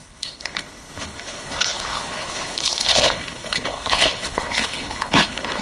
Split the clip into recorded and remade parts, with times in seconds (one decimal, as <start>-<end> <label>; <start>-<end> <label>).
0.0-5.6 remade